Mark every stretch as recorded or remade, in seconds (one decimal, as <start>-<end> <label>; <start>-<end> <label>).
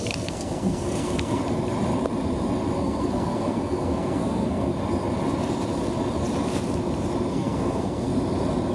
0.0-1.4 remade; 1.4-2.8 recorded; 2.8-4.7 remade; 4.7-7.3 recorded; 7.3-8.1 remade; 8.1-8.7 recorded